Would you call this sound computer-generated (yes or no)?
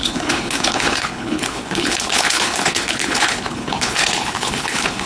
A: yes